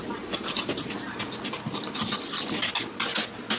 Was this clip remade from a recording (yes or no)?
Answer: no